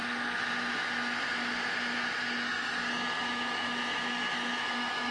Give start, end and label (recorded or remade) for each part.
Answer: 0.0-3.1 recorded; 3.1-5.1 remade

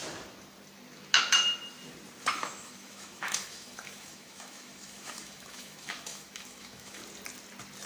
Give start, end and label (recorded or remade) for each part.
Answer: 0.0-2.3 recorded; 2.3-7.0 remade; 7.0-7.9 recorded